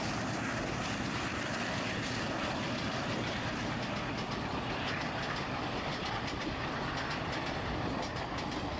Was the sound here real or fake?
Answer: real